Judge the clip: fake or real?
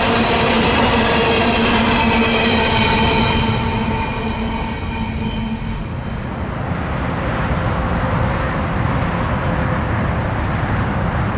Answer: real